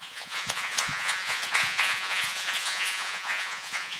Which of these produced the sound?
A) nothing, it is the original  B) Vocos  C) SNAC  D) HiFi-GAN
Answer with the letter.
B